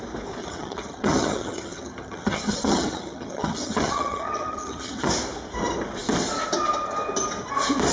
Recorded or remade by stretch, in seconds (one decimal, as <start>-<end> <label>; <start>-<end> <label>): 0.0-0.4 recorded; 0.4-5.1 remade; 5.1-7.9 recorded